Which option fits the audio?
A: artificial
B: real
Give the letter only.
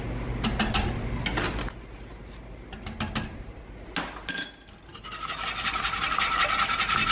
B